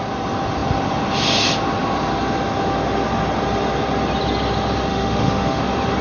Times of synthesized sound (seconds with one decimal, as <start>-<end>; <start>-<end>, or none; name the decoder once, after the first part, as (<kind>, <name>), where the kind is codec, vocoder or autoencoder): 4.9-5.6 (autoencoder, DAC-VAE)